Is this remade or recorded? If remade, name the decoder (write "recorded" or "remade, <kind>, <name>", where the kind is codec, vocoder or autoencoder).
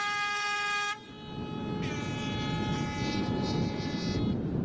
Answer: recorded